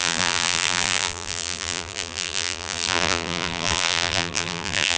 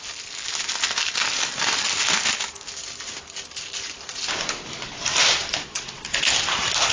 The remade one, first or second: first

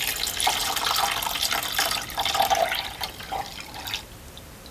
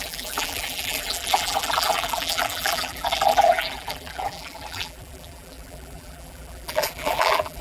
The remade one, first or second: second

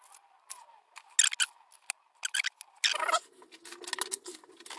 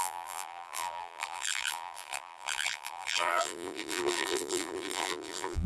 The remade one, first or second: second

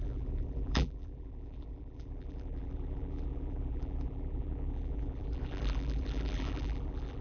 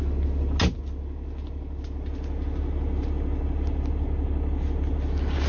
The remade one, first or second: first